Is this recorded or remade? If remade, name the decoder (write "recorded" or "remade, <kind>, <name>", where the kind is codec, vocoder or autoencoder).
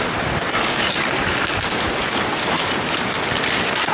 recorded